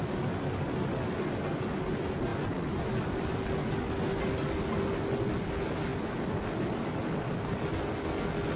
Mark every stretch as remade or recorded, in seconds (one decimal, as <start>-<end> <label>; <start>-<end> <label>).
0.0-8.6 recorded